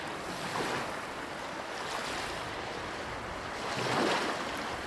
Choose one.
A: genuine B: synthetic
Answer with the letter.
A